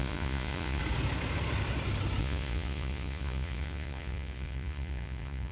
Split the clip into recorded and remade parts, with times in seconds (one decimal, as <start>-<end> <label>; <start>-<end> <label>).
0.0-0.8 remade; 0.8-2.2 recorded; 2.2-5.5 remade